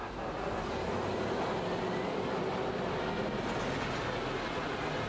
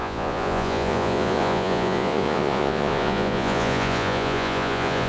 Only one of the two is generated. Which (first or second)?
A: second